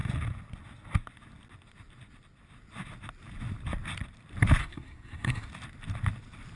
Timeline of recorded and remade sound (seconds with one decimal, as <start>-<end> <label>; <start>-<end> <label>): 0.0-4.6 recorded; 4.6-5.5 remade; 5.5-6.6 recorded